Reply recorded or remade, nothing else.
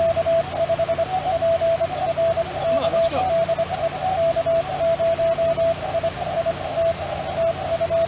recorded